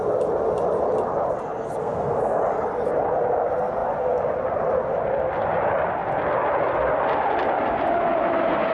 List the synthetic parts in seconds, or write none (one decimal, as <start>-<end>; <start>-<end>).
1.8-2.4